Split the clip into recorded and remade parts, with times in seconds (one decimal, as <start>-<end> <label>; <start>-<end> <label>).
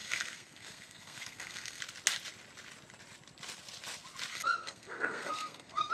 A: 0.0-1.8 remade; 1.8-4.3 recorded; 4.3-5.9 remade